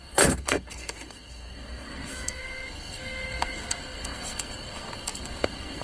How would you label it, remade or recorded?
remade